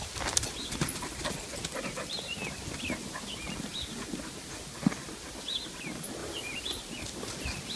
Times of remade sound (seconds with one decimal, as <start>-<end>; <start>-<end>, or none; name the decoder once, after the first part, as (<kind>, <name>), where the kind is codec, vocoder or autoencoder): 6.2-6.7 (vocoder, BigVGAN v2)